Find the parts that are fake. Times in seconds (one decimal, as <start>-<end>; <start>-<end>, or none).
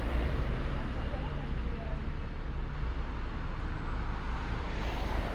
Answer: 0.0-1.3; 4.5-5.3